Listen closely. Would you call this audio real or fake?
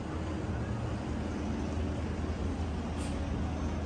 real